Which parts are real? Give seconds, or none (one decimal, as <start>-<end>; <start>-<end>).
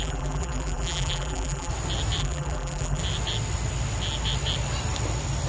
1.7-2.2; 3.0-5.5